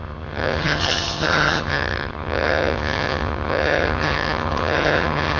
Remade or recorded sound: remade